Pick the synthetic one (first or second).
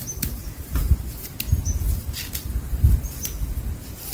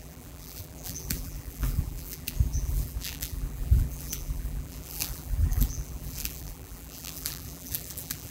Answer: second